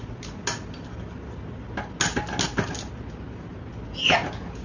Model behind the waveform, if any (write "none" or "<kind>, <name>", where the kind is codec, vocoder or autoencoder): none